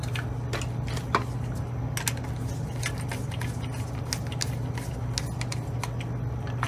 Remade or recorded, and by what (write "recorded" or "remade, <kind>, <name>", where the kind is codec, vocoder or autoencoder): recorded